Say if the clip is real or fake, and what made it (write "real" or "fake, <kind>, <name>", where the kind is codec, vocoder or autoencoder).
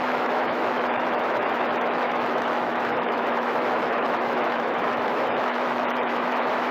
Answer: fake, autoencoder, DAC-VAE